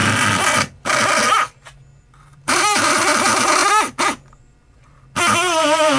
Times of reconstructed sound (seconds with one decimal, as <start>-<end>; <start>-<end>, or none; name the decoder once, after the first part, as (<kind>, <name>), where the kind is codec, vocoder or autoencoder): 2.0-6.0 (vocoder, BigVGAN v2)